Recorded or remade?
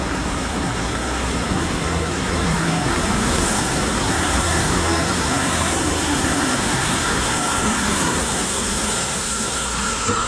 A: remade